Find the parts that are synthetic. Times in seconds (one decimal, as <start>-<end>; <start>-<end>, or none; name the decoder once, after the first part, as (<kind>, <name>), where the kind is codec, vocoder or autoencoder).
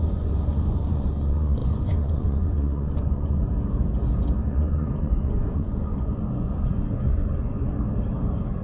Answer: 0.0-3.4 (vocoder, Vocos); 4.5-7.7